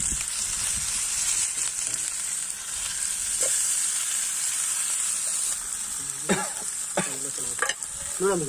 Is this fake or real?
real